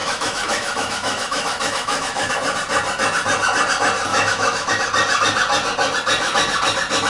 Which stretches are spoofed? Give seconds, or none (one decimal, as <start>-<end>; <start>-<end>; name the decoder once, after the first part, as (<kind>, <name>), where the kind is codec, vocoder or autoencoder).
0.0-2.3 (autoencoder, DAC-VAE); 4.1-4.7

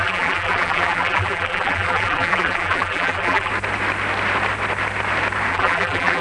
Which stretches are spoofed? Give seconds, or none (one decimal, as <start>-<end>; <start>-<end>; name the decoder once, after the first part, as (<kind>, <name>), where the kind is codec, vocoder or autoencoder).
0.0-3.5 (vocoder, BigVGAN v2); 5.5-6.2

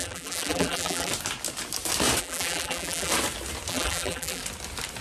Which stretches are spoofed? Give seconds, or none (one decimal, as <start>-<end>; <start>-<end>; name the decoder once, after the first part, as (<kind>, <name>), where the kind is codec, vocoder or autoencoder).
0.0-1.1 (vocoder, BigVGAN v2); 2.2-3.1; 3.7-4.4